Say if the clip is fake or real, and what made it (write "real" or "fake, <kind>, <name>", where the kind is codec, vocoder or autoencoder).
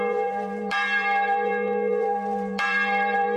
fake, vocoder, BigVGAN v2